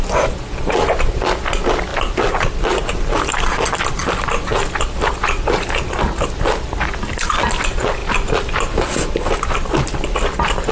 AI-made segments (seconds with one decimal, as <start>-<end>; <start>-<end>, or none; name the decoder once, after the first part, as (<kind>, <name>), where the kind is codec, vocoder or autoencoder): none